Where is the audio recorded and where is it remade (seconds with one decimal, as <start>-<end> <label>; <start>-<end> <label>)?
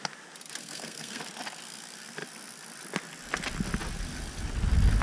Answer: 0.0-0.6 recorded; 0.6-1.2 remade; 1.2-5.0 recorded